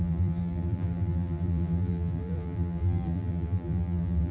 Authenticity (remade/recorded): remade